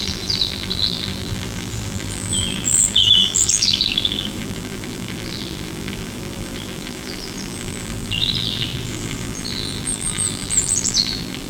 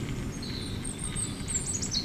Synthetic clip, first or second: first